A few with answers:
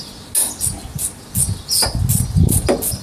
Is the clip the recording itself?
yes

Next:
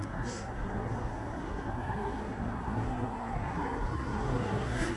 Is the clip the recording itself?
no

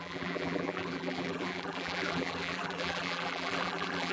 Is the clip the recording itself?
no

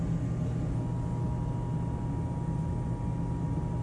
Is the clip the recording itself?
yes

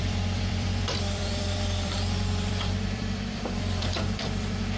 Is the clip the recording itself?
no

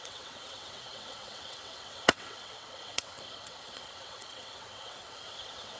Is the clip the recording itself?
no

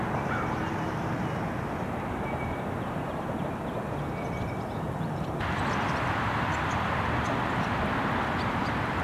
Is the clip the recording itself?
yes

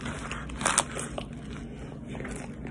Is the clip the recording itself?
yes